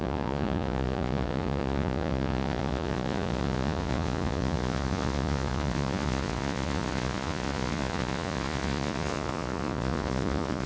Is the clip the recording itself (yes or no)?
no